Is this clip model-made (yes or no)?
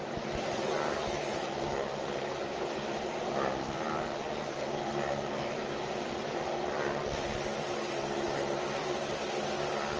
no